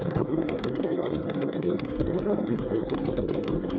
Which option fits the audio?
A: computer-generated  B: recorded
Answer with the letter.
A